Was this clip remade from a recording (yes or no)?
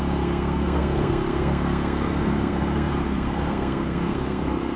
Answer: yes